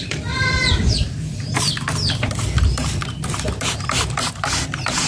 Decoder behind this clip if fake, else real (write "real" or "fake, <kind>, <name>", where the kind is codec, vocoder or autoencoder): fake, vocoder, BigVGAN v2